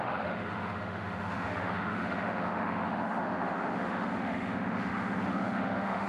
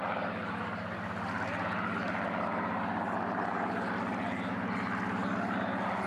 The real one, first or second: second